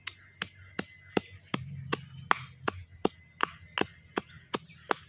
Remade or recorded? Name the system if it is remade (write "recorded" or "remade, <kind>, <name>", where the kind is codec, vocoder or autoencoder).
recorded